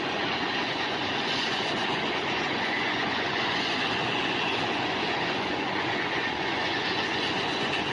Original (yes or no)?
no